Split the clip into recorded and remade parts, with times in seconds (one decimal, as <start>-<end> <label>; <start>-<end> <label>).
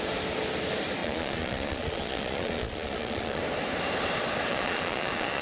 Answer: 0.0-1.0 recorded; 1.0-3.4 remade; 3.4-4.5 recorded; 4.5-5.4 remade